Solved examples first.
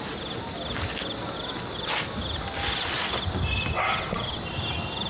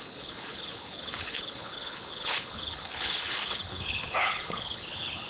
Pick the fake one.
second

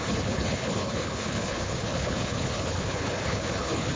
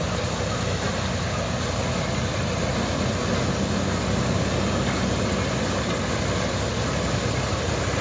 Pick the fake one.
first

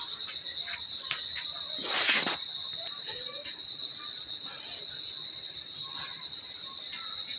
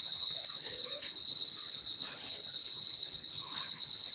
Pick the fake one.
second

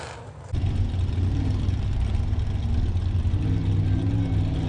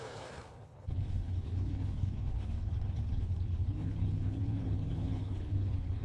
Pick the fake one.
second